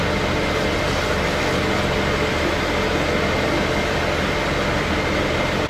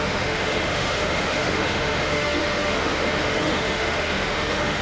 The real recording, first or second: first